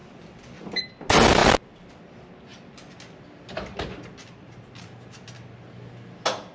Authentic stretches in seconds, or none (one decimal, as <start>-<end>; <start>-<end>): 0.8-1.4; 1.9-6.5

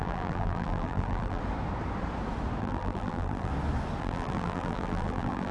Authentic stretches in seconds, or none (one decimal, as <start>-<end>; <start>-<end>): 1.4-2.6; 3.5-4.0

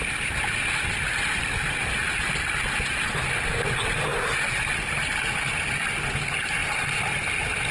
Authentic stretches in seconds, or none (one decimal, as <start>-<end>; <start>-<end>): 0.0-1.8; 2.3-6.6